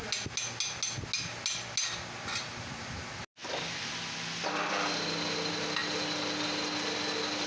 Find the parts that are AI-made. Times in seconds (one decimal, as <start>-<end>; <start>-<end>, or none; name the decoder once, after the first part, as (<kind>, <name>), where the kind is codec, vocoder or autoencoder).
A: 2.3-3.0 (vocoder, BigVGAN v2)